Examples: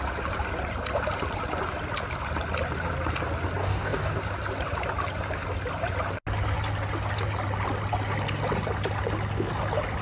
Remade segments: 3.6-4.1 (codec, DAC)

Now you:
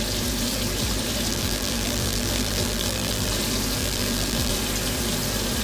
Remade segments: 1.3-3.3 (vocoder, BigVGAN v2); 3.8-4.5